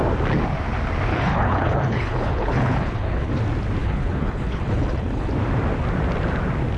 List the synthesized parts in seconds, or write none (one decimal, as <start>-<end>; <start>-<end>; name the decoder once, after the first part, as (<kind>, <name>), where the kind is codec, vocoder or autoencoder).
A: 1.1-3.4 (codec, HILCodec); 3.8-5.3

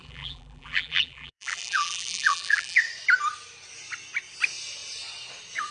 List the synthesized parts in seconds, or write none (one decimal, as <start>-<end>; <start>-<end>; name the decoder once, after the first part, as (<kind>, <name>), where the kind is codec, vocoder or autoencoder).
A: 0.0-2.8 (vocoder, BigVGAN v2)

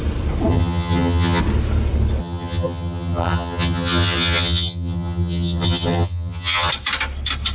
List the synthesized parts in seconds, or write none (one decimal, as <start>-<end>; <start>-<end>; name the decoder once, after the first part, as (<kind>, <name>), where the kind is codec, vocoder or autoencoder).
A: 0.5-1.4 (vocoder, HiFi-GAN); 2.2-6.7

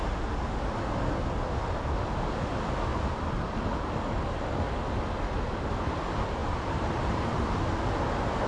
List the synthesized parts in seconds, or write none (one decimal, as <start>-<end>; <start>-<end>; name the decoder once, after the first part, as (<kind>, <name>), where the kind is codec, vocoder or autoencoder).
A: 2.9-4.4 (vocoder, BigVGAN v2); 6.4-7.3

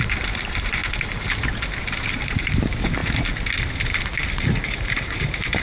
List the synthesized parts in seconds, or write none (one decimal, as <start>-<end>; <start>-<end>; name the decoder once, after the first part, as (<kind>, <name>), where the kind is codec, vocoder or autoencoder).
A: 0.0-0.8 (vocoder, BigVGAN v2); 1.8-3.0; 4.4-5.6

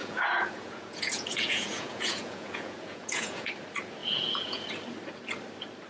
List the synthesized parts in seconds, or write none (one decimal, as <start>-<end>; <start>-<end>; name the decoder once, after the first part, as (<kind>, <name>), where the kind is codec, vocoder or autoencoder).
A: 0.0-3.5 (vocoder, Vocos); 4.0-4.7